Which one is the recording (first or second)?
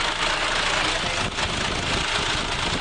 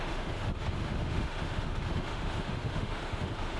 first